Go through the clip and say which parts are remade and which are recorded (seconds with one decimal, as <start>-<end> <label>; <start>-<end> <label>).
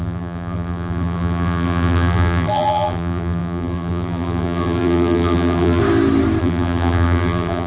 0.0-5.8 remade; 5.8-6.4 recorded; 6.4-7.7 remade